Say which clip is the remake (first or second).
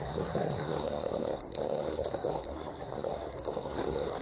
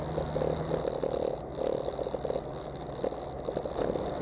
first